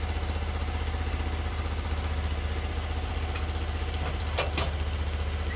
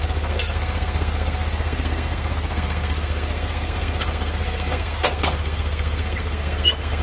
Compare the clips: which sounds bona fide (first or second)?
first